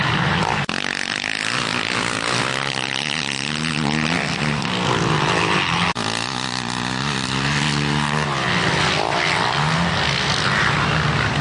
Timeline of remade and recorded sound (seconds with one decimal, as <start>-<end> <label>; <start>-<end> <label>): 0.0-1.7 remade; 1.7-2.4 recorded; 2.4-11.4 remade